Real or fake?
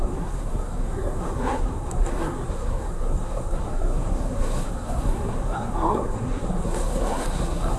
fake